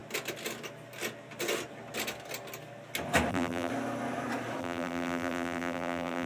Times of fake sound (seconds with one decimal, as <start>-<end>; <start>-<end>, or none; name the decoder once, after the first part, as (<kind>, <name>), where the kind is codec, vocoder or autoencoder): 3.3-3.7 (vocoder, BigVGAN v2); 4.6-6.3